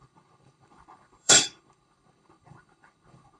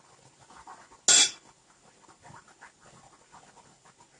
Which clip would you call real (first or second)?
second